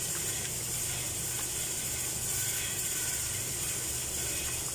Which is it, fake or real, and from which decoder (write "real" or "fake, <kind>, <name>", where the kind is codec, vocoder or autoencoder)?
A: real